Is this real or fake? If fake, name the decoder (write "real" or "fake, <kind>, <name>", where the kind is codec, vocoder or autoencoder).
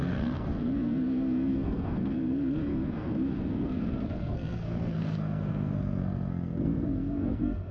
fake, codec, SNAC